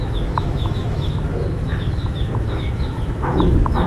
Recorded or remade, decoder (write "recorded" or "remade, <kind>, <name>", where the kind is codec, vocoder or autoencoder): remade, autoencoder, DAC-VAE